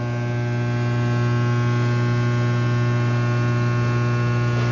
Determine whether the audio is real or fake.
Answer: real